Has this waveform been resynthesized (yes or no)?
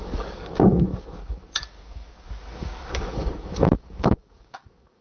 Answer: yes